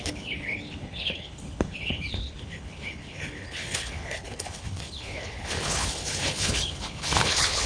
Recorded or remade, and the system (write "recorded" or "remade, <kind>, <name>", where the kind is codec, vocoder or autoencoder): remade, codec, HILCodec